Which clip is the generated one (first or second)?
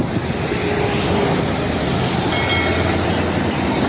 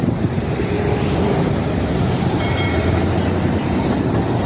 second